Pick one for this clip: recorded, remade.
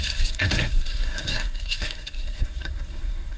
remade